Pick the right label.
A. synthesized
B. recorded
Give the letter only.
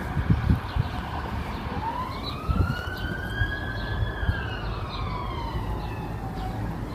B